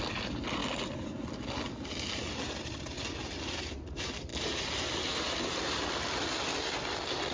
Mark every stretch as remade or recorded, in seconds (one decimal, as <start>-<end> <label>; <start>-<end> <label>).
0.0-7.3 recorded

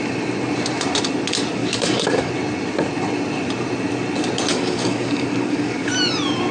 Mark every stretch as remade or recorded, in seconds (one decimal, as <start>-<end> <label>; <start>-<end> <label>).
0.0-1.6 recorded; 1.6-2.3 remade; 2.3-4.5 recorded; 4.5-5.9 remade; 5.9-6.5 recorded

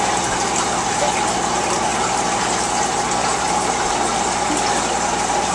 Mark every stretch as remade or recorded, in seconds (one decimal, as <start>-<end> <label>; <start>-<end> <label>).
0.0-5.5 recorded